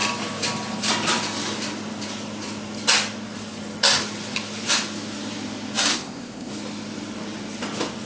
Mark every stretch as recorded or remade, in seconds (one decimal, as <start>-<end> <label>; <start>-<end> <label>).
0.0-5.9 recorded; 5.9-6.5 remade; 6.5-8.1 recorded